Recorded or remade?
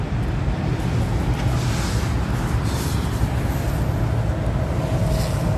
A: recorded